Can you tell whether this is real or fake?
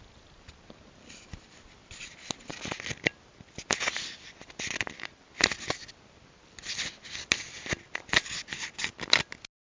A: real